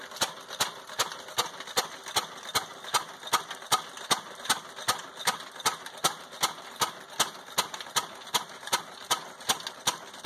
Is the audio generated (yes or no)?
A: no